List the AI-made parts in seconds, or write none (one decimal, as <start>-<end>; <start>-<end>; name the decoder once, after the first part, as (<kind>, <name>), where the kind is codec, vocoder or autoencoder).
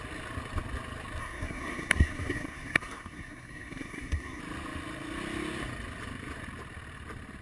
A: 1.2-4.4 (codec, SNAC)